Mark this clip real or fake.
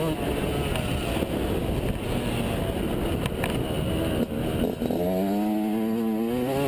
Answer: real